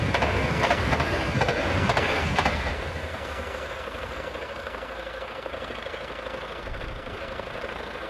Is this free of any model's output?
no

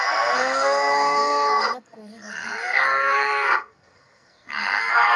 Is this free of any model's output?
no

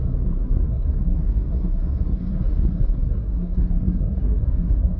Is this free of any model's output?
no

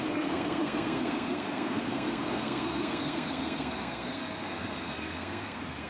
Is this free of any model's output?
no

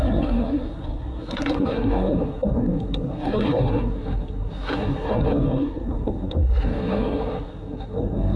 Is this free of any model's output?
no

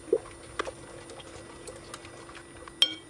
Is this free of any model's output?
yes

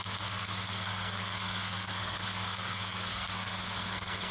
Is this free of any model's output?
no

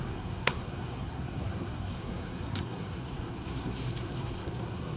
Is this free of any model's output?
no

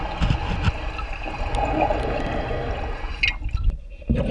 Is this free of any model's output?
yes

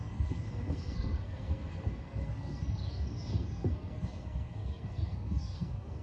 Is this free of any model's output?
no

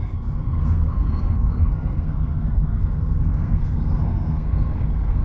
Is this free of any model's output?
no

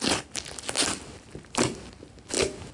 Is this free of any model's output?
yes